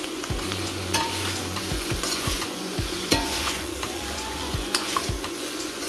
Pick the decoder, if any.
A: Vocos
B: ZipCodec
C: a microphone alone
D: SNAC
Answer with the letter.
A